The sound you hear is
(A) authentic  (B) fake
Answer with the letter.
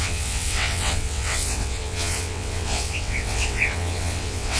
B